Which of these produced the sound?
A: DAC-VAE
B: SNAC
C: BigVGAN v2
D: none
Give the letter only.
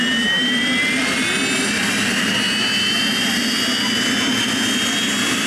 D